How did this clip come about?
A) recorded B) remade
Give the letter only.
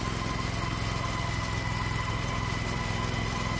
A